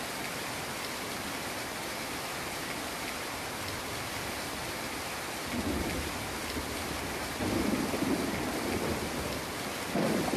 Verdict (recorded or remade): recorded